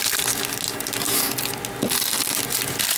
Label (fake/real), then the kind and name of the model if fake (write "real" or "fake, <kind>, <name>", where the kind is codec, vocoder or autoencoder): real